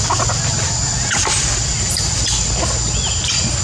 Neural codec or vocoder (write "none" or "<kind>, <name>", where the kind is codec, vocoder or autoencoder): none